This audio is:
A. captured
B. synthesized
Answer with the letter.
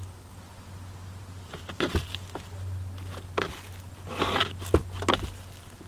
A